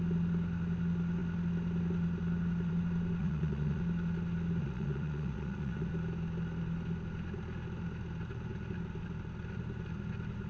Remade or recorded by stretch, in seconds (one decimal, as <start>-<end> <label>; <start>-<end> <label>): 0.0-3.2 recorded; 3.2-3.8 remade; 3.8-4.6 recorded; 4.6-5.9 remade; 5.9-10.5 recorded